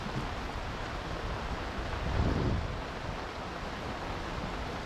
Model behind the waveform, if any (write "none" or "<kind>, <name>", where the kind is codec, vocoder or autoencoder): none